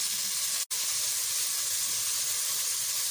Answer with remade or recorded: recorded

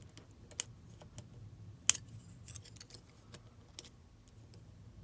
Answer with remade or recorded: recorded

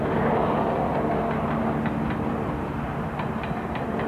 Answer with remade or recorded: recorded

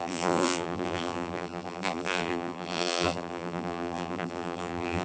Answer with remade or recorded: remade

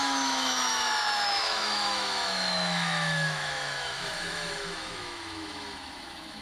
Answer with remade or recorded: remade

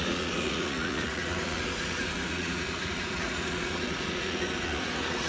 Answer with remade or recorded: remade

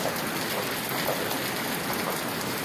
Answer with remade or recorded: recorded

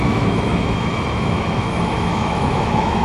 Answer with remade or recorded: remade